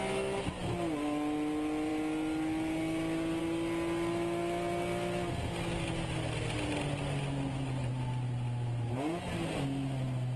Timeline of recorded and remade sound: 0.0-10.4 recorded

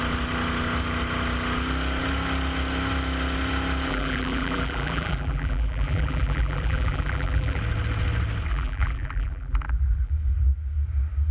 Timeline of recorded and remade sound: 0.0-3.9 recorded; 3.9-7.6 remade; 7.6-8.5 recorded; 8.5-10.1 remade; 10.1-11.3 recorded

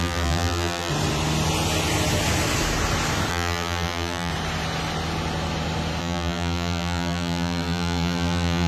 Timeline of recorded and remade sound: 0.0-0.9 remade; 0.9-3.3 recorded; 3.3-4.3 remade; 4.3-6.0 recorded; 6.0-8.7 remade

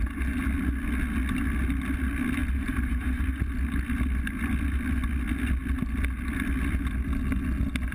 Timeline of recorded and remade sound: 0.0-2.4 recorded; 2.4-3.4 remade; 3.4-7.9 recorded

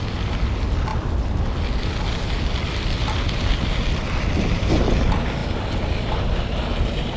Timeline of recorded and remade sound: 0.0-7.2 recorded

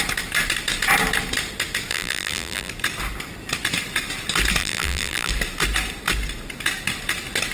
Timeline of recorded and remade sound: 0.0-1.9 recorded; 1.9-2.7 remade; 2.7-4.6 recorded; 4.6-5.3 remade; 5.3-7.5 recorded

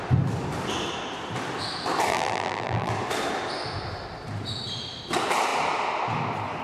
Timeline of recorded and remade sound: 0.0-2.1 recorded; 2.1-2.9 remade; 2.9-6.6 recorded